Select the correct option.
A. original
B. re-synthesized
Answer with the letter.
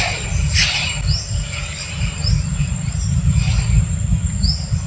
A